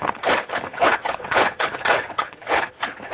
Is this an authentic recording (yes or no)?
no